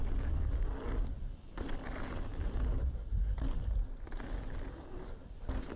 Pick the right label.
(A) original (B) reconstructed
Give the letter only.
A